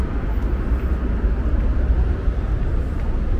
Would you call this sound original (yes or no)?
yes